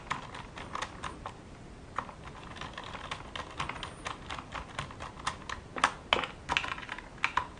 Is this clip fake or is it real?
real